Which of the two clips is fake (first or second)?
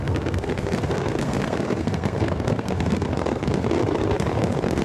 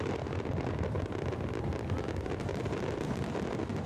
first